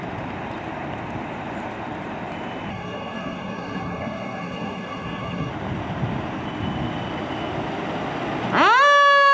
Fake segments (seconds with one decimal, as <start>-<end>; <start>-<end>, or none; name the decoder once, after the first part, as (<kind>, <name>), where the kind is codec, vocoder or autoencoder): 2.7-5.5 (codec, SNAC)